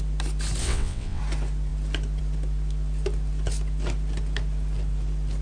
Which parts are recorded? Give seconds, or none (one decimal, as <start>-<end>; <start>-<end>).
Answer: 0.0-0.6; 1.2-5.4